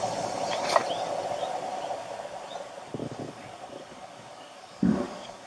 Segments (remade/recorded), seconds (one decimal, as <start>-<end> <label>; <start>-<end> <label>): 0.0-3.0 recorded; 3.0-5.5 remade